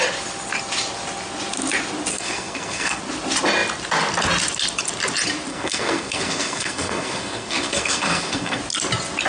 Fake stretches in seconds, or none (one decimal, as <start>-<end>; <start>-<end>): 2.1-3.0; 5.5-8.6